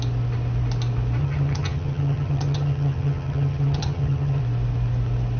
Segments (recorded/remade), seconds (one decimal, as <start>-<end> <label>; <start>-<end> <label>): 0.0-1.2 recorded; 1.2-4.4 remade; 4.4-5.4 recorded